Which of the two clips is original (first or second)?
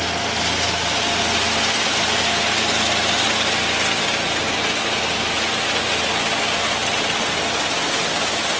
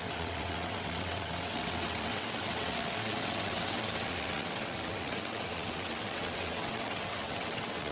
first